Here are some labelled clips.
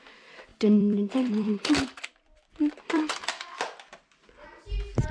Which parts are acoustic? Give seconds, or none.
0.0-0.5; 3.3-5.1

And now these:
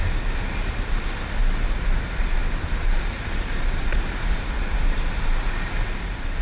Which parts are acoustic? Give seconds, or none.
0.0-2.4; 5.2-6.4

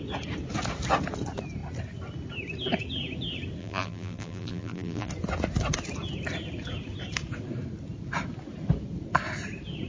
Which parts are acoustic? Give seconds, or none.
0.0-3.6; 5.1-9.9

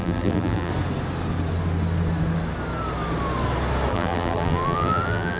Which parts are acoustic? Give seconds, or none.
0.7-3.9

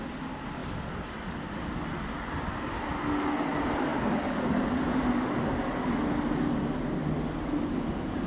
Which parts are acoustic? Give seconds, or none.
0.0-8.3